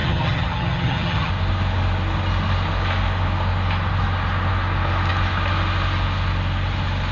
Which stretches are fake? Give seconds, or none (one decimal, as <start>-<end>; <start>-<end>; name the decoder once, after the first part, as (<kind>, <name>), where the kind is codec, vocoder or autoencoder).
0.0-1.3 (vocoder, HiFi-GAN)